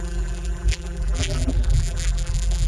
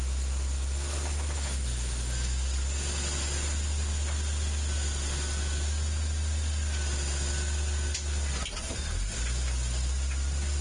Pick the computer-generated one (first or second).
first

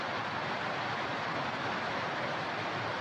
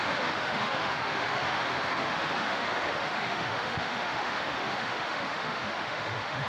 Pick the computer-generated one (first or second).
second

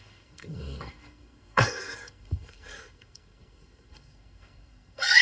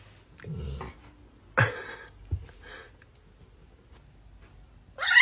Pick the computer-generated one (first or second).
first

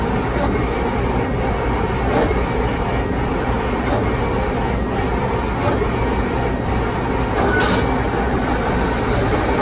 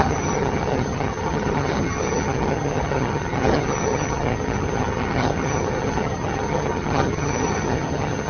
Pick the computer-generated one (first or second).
second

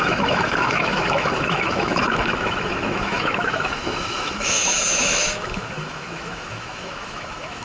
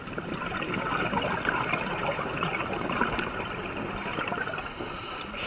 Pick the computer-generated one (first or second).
first